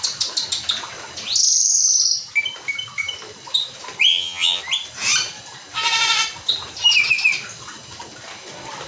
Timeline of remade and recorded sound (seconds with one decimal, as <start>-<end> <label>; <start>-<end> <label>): 0.0-4.1 recorded; 4.1-4.6 remade; 4.6-8.9 recorded